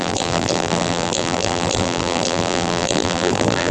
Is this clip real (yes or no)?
no